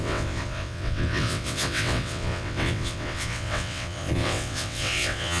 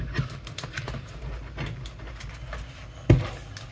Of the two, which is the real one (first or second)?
second